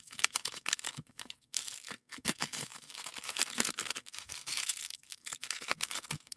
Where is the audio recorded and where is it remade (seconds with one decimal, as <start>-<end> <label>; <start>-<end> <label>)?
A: 0.0-6.4 remade